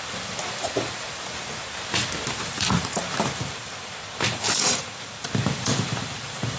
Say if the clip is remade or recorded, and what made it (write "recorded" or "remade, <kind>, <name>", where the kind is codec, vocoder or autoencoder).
remade, vocoder, BigVGAN v2